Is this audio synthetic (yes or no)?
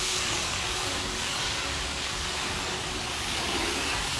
yes